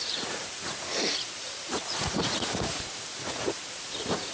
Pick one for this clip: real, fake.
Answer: fake